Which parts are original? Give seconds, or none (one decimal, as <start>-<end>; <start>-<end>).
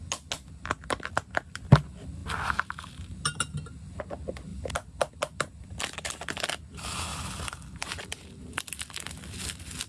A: 0.0-4.5; 5.9-7.1; 7.9-9.9